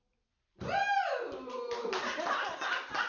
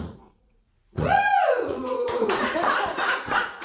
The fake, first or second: second